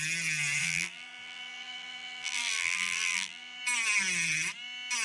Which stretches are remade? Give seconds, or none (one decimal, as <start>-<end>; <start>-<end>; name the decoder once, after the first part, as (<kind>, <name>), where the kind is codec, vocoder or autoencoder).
0.6-3.6 (vocoder, BigVGAN v2)